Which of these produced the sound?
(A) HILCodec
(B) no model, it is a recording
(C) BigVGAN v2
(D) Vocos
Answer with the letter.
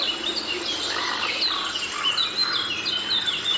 B